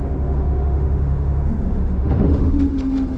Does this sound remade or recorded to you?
remade